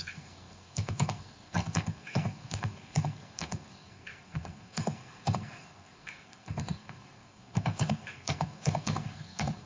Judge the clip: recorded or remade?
remade